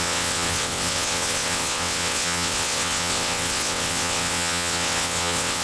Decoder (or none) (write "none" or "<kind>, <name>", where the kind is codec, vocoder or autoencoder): vocoder, WaveNeXt